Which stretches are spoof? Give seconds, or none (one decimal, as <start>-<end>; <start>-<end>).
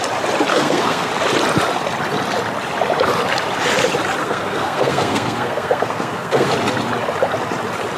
0.5-1.1; 4.2-6.5